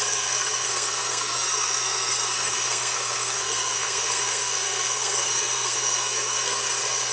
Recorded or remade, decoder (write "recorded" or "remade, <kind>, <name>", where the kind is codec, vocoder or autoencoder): remade, codec, SNAC